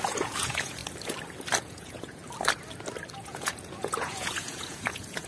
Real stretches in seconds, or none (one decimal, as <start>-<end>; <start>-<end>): 0.8-1.6; 2.2-3.1